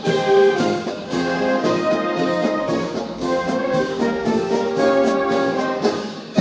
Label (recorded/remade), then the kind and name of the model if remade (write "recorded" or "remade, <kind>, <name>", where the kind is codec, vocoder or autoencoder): remade, codec, DAC